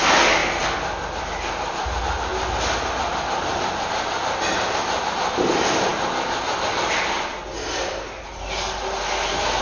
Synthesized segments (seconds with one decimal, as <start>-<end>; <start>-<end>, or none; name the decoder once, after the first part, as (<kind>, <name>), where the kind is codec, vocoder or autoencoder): none